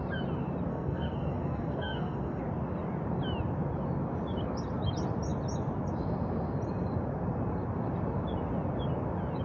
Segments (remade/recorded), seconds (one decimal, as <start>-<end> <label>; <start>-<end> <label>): 0.0-0.7 recorded; 0.7-2.4 remade; 2.4-9.4 recorded